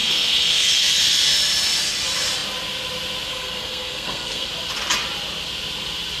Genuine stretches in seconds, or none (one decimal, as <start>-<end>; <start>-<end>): 1.0-3.3; 4.5-6.2